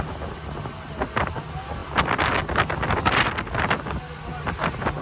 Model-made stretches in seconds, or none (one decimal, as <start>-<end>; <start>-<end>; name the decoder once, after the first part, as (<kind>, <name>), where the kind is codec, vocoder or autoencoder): none